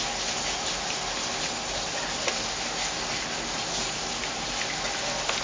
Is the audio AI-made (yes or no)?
no